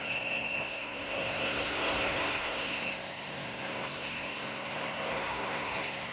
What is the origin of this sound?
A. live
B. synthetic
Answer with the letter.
B